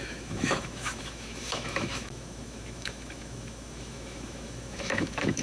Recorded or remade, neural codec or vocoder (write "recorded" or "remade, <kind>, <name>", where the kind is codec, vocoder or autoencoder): remade, autoencoder, DAC-VAE